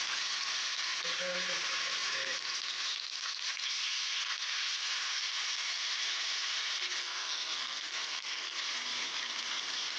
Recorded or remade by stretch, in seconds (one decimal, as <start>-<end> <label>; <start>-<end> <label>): 0.0-7.0 recorded; 7.0-8.6 remade; 8.6-10.0 recorded